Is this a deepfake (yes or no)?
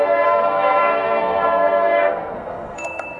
yes